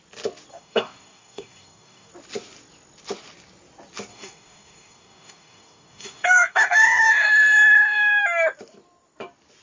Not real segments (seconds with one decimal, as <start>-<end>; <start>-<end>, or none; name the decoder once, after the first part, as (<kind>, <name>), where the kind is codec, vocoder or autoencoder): 0.5-2.1 (codec, DAC); 4.1-8.2